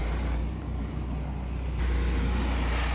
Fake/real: real